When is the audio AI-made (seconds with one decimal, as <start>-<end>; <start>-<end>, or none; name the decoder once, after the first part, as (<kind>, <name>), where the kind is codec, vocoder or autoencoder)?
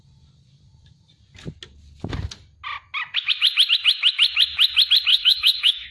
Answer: 5.1-5.9 (autoencoder, DAC-VAE)